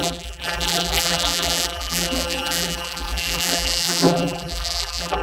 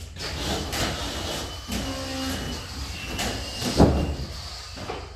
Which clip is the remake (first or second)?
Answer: first